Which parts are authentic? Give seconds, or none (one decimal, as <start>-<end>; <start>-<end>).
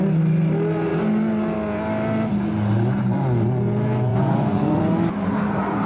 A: 0.0-4.1; 4.8-5.9